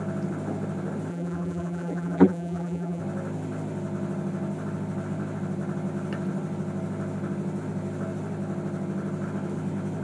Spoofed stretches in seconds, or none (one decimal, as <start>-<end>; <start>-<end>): 1.1-3.0